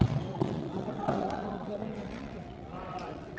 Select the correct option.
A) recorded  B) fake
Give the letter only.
B